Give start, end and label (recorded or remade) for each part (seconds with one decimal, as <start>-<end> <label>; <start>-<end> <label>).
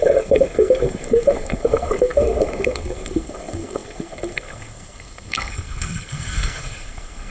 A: 0.0-7.3 remade